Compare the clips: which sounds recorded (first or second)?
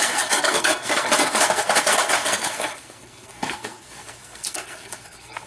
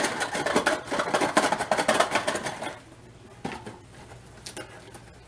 second